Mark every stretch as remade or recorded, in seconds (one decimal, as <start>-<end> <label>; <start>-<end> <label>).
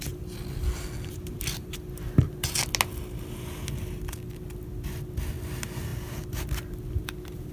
0.0-7.5 recorded